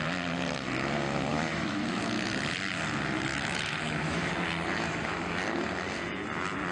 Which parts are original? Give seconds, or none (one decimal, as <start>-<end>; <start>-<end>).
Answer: 0.0-1.3; 2.0-3.3; 4.3-6.7